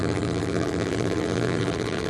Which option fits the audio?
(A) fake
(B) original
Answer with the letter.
A